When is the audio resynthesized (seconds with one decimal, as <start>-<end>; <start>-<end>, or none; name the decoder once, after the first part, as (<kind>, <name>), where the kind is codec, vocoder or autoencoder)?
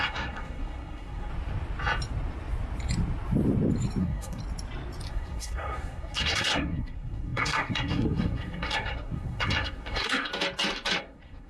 0.0-1.3 (codec, SNAC); 4.0-4.4; 5.1-10.3; 11.0-11.5